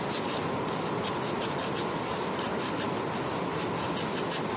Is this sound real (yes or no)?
yes